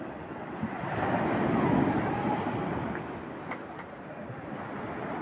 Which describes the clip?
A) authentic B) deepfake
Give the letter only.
A